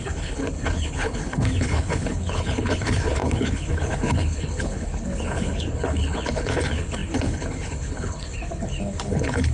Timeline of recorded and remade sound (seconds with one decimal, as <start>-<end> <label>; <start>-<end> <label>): 0.0-9.5 remade